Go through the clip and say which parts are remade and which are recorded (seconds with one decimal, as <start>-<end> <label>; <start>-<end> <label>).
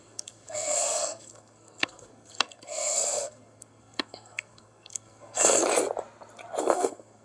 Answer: 0.0-5.6 remade; 5.6-6.6 recorded; 6.6-7.2 remade